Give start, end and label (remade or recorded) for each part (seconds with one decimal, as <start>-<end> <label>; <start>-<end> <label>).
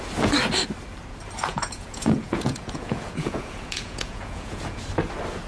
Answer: 0.0-1.5 recorded; 1.5-4.8 remade; 4.8-5.5 recorded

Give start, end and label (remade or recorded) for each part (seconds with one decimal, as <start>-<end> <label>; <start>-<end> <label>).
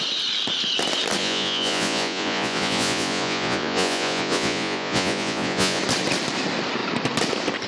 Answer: 0.0-1.2 recorded; 1.2-5.8 remade; 5.8-7.7 recorded